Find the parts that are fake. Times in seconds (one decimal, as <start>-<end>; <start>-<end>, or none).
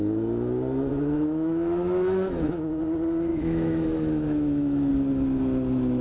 0.9-2.8; 3.3-4.9